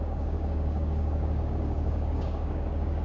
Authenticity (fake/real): fake